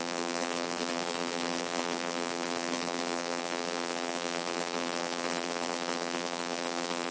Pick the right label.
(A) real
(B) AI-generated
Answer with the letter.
B